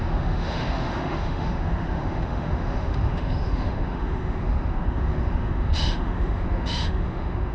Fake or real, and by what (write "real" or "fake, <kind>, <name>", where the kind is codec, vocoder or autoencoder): fake, autoencoder, DAC-VAE